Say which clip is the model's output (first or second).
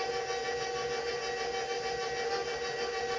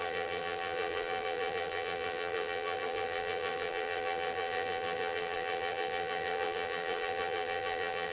second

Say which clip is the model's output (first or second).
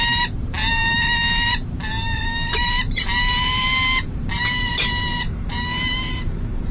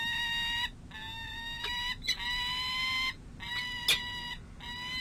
first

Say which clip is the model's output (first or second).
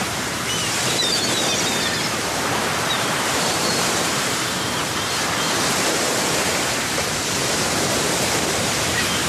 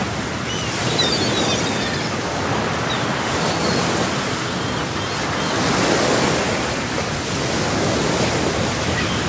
first